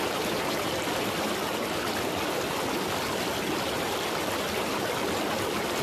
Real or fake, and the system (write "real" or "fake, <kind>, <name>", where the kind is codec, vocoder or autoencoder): real